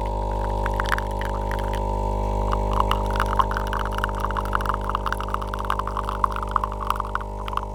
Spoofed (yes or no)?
no